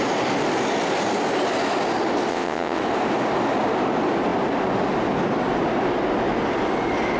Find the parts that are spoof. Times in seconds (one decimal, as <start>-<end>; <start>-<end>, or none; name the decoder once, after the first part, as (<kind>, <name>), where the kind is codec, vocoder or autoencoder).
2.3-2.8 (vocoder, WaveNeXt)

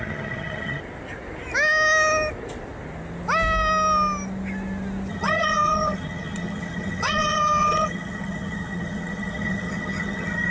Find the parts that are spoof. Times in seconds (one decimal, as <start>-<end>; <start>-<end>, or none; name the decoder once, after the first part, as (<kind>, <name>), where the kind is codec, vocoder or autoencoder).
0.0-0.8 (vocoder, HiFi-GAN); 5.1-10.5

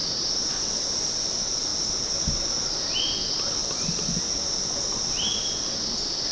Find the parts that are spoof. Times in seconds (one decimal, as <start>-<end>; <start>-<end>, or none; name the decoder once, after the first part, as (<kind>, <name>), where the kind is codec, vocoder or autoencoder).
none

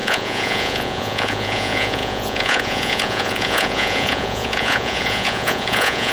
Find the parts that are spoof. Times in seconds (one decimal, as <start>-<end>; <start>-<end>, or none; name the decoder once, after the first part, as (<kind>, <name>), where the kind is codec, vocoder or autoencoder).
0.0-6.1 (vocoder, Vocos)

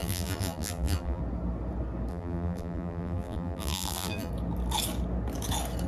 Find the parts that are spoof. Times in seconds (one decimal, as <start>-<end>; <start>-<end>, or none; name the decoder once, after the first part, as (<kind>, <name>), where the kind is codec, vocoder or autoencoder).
0.0-1.2 (vocoder, BigVGAN v2); 2.1-4.3